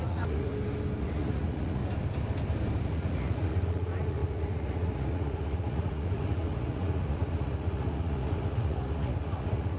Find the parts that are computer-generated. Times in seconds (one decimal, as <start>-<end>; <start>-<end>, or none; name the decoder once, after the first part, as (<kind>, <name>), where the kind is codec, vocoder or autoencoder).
0.0-0.5 (vocoder, Vocos); 1.0-1.8; 2.8-9.8